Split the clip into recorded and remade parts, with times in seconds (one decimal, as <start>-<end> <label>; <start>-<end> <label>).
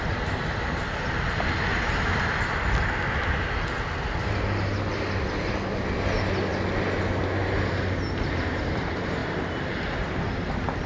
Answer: 0.0-10.9 recorded